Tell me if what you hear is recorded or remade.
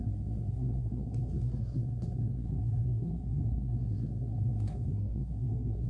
remade